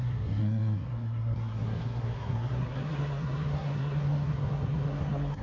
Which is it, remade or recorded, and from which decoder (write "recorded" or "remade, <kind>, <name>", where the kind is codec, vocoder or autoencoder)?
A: remade, codec, SNAC